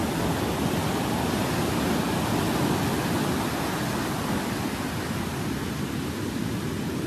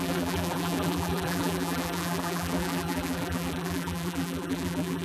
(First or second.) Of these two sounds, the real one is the first